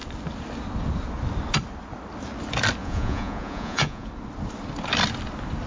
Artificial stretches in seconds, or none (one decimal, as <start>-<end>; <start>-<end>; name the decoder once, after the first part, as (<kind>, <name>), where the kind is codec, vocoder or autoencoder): 2.8-4.1 (vocoder, Vocos)